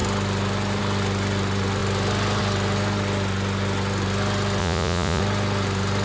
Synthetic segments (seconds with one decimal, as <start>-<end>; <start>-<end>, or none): 4.6-5.2